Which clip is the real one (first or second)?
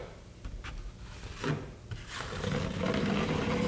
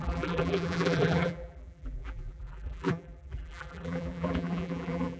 first